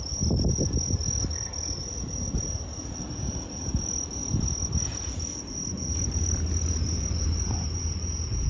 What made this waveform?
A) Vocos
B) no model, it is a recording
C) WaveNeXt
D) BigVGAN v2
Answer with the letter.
D